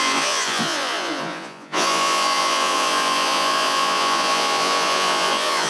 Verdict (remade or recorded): remade